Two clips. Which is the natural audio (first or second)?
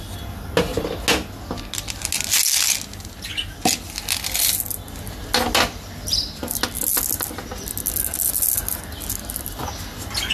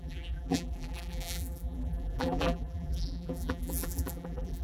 first